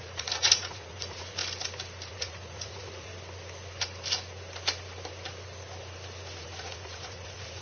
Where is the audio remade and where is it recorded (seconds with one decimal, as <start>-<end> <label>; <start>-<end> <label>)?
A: 0.0-1.4 remade; 1.4-2.1 recorded; 2.1-3.1 remade; 3.1-6.4 recorded; 6.4-7.6 remade